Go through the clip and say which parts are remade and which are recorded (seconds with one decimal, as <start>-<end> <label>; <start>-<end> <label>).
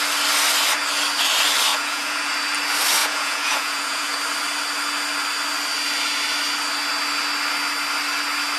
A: 0.0-1.7 recorded; 1.7-2.3 remade; 2.3-3.0 recorded; 3.0-4.2 remade; 4.2-8.6 recorded